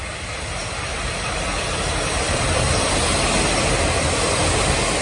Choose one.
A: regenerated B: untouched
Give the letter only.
B